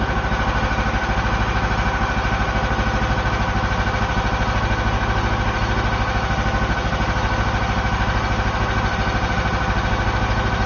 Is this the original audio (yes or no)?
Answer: yes